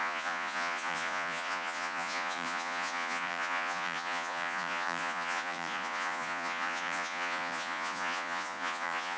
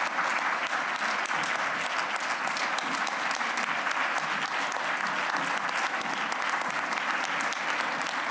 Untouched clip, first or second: second